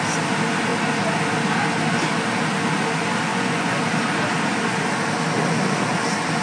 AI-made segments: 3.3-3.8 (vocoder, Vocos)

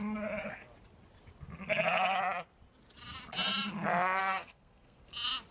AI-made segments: 4.2-5.1 (codec, SNAC)

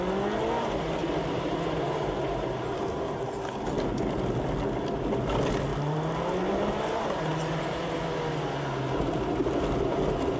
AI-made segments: 1.0-1.6 (vocoder, BigVGAN v2); 5.7-7.9

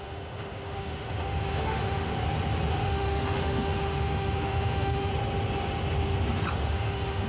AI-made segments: 0.0-2.1 (autoencoder, DAC-VAE); 2.7-5.1; 6.5-7.3

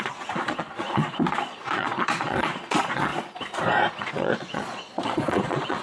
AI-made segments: 0.0-3.1 (vocoder, Vocos); 4.0-5.8

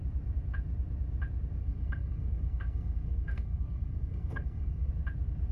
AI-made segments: 1.6-4.9 (codec, SNAC)

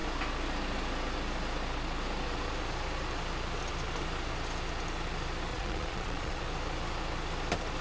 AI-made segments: 5.5-6.4 (vocoder, Vocos)